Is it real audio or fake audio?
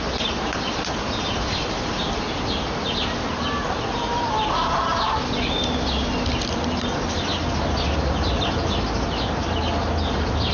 real